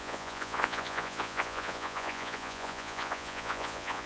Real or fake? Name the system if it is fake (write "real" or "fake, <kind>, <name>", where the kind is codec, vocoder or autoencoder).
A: fake, vocoder, Vocos